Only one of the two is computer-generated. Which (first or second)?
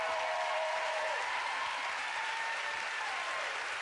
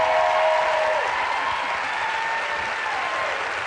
first